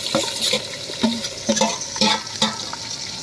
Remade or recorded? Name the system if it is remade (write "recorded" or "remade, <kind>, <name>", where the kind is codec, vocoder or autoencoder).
recorded